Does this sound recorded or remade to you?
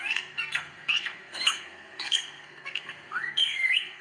remade